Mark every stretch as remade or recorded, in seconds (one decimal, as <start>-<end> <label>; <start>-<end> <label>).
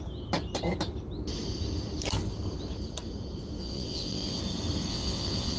0.0-3.6 recorded; 3.6-4.4 remade; 4.4-4.9 recorded; 4.9-5.6 remade